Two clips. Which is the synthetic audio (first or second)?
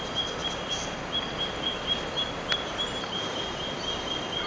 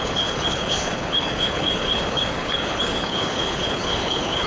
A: second